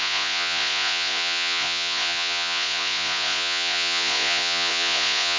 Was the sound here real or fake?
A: fake